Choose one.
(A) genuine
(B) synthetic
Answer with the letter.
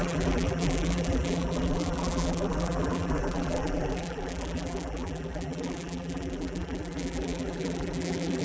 B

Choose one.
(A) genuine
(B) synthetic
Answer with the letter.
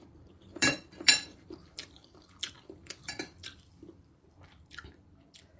B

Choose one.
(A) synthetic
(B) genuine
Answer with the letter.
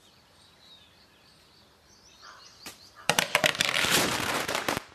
A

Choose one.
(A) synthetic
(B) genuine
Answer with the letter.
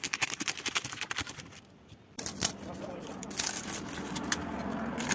A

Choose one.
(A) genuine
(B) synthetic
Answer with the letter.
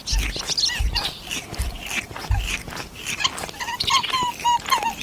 A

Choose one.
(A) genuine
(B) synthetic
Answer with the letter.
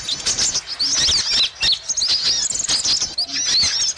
A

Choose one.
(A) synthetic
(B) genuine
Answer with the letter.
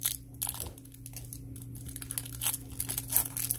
B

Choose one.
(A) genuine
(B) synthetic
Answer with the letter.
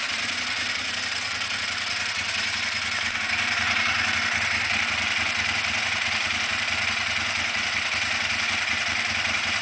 B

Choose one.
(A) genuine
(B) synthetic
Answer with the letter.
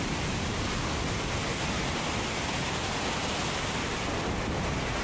A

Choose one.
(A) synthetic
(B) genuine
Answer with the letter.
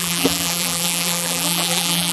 A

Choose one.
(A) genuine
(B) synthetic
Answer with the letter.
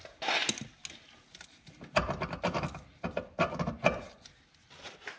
A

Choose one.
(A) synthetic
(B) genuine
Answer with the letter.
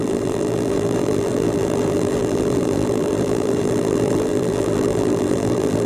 A